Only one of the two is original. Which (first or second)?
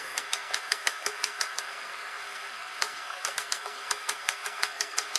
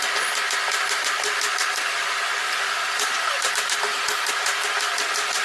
second